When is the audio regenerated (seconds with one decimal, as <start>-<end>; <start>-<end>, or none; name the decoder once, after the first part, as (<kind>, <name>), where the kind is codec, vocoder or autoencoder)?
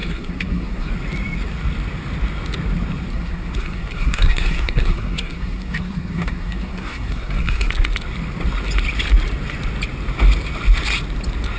0.0-0.9 (codec, SNAC); 3.1-7.7